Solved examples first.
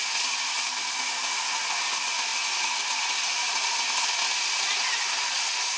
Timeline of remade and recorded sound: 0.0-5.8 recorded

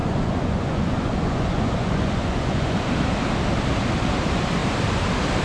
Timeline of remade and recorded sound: 0.0-2.8 remade; 2.8-5.4 recorded

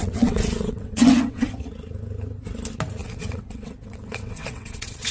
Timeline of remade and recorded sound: 0.0-1.5 remade; 1.5-3.0 recorded; 3.0-5.1 remade

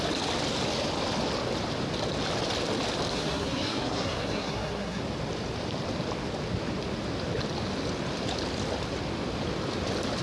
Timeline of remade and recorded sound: 0.0-3.1 recorded; 3.1-5.0 remade; 5.0-10.2 recorded

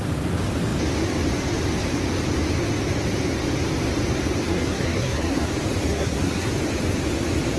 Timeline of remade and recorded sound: 0.0-4.5 recorded; 4.5-5.5 remade; 5.5-5.9 recorded; 5.9-6.5 remade; 6.5-7.6 recorded

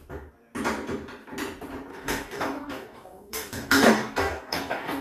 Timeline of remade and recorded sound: 0.0-1.9 recorded; 1.9-5.0 remade

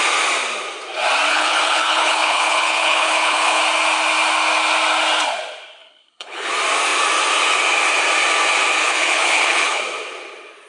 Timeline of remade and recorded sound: 0.0-1.3 recorded; 1.3-3.6 remade; 3.6-5.8 recorded; 5.8-6.5 remade; 6.5-8.8 recorded; 8.8-9.8 remade; 9.8-10.7 recorded